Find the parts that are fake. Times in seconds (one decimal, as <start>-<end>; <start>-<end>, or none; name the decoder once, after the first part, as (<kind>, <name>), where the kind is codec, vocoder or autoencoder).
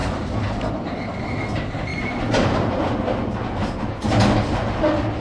1.9-2.8 (vocoder, BigVGAN v2); 3.6-4.2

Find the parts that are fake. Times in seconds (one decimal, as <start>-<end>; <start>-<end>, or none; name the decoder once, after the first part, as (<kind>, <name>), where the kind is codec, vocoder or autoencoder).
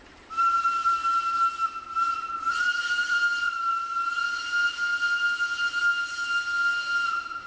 0.0-1.0 (vocoder, BigVGAN v2); 2.5-3.9; 4.5-4.9; 5.8-7.5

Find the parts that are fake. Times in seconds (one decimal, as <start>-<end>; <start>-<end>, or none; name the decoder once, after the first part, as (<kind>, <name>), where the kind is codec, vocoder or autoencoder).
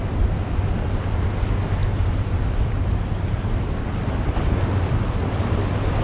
1.8-4.9 (vocoder, BigVGAN v2)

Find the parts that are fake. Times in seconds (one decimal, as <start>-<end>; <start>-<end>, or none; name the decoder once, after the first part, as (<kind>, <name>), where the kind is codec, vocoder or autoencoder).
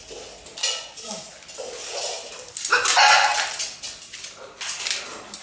3.3-5.0 (vocoder, BigVGAN v2)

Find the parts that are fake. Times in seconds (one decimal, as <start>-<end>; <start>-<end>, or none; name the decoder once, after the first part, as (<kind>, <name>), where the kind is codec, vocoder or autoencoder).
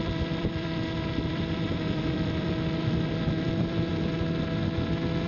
0.0-3.9 (vocoder, BigVGAN v2)